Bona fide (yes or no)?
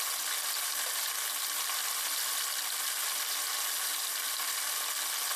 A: yes